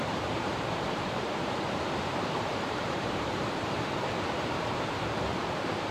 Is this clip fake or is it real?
fake